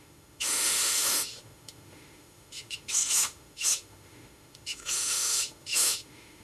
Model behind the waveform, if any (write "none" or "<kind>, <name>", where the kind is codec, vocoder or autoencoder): autoencoder, DAC-VAE